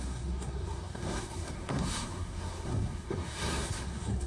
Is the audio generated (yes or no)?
yes